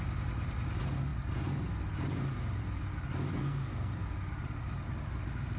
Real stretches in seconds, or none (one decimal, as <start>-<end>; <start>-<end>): 0.0-3.3; 3.9-5.6